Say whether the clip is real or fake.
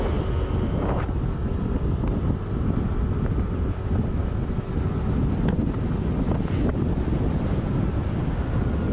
real